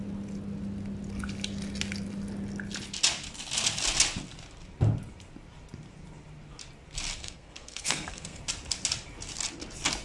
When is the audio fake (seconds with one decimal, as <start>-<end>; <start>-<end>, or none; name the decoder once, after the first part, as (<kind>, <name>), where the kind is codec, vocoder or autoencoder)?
7.2-8.4 (codec, SNAC)